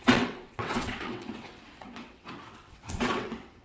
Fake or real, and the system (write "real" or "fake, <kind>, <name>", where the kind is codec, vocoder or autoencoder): fake, vocoder, WaveNeXt